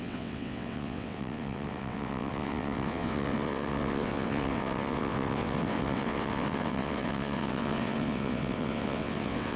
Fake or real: fake